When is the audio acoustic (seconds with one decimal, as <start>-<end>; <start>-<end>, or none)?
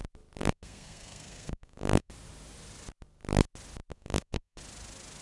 0.0-0.4; 2.1-3.9; 4.6-5.2